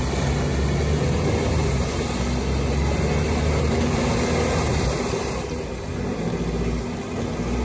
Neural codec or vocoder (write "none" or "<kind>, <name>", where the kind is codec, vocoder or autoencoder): none